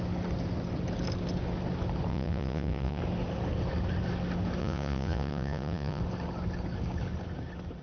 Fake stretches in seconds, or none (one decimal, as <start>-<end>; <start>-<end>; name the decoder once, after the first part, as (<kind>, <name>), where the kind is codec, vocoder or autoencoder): 2.1-3.0 (vocoder, Vocos); 4.6-6.0